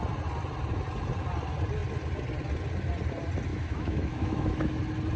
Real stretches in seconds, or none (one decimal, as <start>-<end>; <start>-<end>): 0.0-3.5; 4.7-5.2